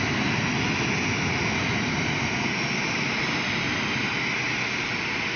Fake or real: real